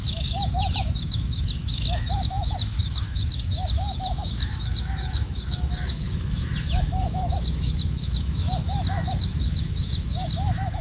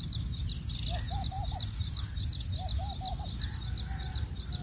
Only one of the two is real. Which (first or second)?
second